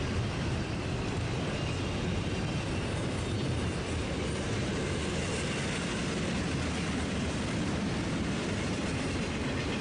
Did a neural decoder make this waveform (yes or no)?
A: no